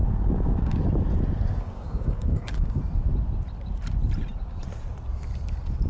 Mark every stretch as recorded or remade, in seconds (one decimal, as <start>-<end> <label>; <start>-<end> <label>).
0.0-0.7 remade; 0.7-1.5 recorded; 1.5-2.8 remade; 2.8-5.9 recorded